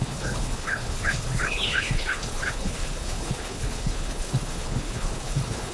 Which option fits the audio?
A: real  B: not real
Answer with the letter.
B